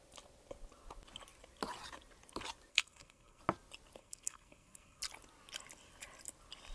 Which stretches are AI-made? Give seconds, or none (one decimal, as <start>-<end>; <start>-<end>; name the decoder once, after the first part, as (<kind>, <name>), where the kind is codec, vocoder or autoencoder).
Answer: 2.7-3.4 (codec, SNAC); 4.0-5.0